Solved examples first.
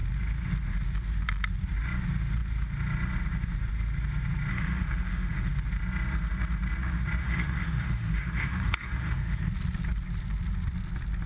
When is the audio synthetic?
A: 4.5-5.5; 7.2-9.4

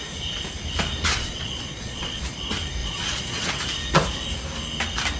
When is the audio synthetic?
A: 1.1-2.2; 2.8-3.5